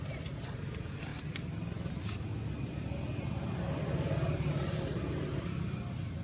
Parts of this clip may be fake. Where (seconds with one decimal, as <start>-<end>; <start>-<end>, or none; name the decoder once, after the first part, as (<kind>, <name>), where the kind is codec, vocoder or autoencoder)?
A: 0.0-1.1 (vocoder, BigVGAN v2); 1.9-2.3; 4.5-6.2